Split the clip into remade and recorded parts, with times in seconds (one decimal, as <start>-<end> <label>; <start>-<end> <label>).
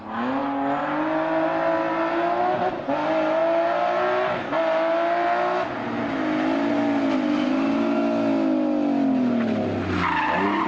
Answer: 0.0-10.7 recorded